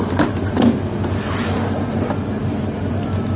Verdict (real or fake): real